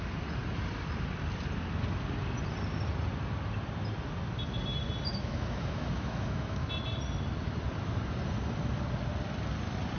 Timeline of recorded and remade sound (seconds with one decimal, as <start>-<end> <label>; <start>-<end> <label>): 0.0-5.1 recorded; 5.1-6.7 remade; 6.7-10.0 recorded